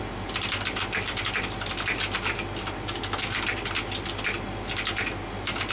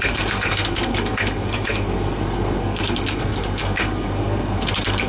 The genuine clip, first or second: first